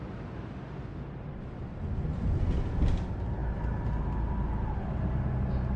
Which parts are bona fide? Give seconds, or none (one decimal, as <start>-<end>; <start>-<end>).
0.0-5.8

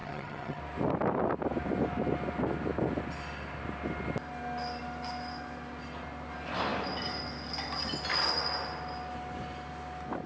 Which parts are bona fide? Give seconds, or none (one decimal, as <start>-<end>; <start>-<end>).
0.6-10.3

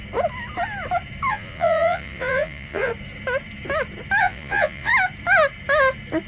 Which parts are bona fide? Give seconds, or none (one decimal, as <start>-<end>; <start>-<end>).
0.0-1.3; 2.9-4.2; 4.9-6.3

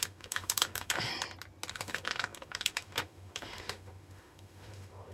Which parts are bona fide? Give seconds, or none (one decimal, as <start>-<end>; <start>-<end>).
1.1-1.7

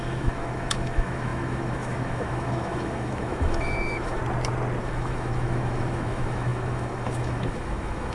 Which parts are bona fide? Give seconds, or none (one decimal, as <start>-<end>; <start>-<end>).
4.2-4.8

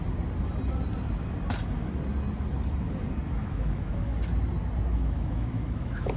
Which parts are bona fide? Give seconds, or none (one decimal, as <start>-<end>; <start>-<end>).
0.0-3.4; 4.1-4.9

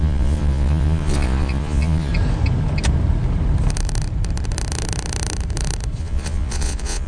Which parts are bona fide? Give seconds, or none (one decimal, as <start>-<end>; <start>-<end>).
2.1-6.0

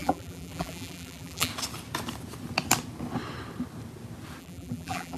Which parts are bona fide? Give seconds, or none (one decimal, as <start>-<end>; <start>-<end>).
1.5-4.4